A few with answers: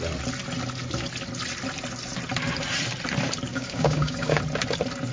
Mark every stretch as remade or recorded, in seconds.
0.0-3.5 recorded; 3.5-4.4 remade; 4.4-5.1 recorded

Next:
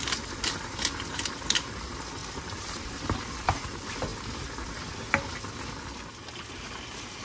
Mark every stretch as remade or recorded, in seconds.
0.0-2.2 recorded; 2.2-2.8 remade; 2.8-7.2 recorded

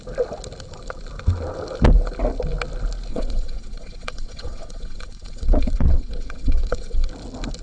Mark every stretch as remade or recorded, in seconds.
0.0-3.1 recorded; 3.1-7.1 remade; 7.1-7.6 recorded